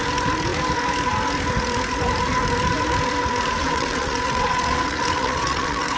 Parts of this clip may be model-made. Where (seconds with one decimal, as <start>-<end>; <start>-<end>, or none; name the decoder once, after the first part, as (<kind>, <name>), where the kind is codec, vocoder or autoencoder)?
3.6-6.0 (vocoder, WaveNeXt)